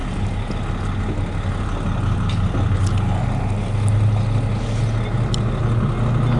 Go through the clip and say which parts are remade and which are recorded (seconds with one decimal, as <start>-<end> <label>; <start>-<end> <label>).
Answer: 0.0-6.4 recorded